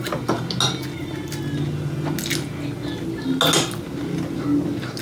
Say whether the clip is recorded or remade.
recorded